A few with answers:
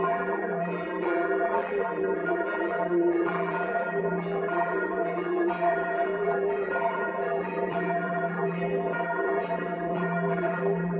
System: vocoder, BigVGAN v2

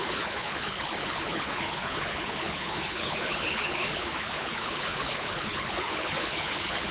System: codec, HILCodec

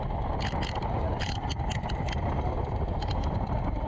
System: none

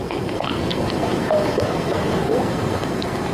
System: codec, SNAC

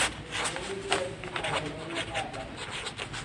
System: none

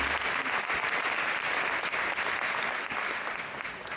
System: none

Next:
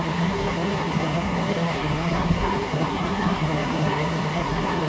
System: codec, SNAC